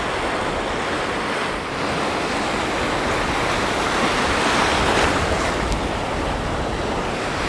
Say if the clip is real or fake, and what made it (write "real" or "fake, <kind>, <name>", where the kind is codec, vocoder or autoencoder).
real